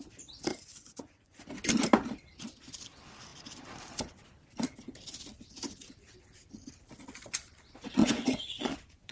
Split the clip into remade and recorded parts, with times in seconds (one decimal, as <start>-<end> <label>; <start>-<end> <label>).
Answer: 0.0-0.5 recorded; 0.5-1.4 remade; 1.4-8.0 recorded; 8.0-9.1 remade